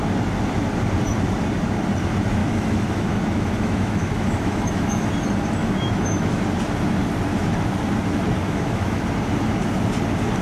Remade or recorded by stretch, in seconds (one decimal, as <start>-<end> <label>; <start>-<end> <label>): 0.0-2.4 recorded; 2.4-5.1 remade; 5.1-5.6 recorded; 5.6-6.4 remade; 6.4-8.4 recorded; 8.4-9.0 remade; 9.0-10.4 recorded